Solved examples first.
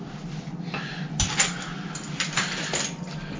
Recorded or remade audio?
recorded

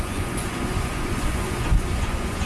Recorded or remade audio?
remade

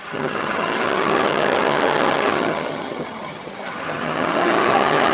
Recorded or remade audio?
remade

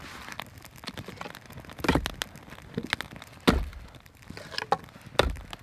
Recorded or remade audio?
recorded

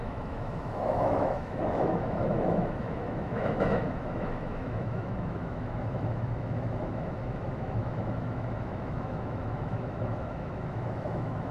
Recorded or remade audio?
remade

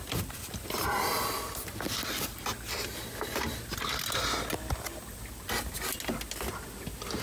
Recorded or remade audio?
recorded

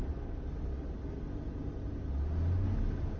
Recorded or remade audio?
recorded